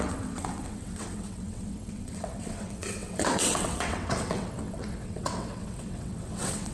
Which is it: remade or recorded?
remade